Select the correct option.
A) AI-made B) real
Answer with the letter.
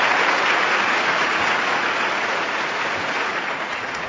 A